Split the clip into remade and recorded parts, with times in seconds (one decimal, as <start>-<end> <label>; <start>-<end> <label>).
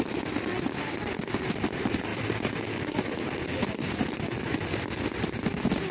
0.0-5.9 recorded